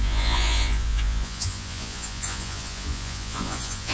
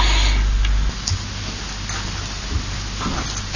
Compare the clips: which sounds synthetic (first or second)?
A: first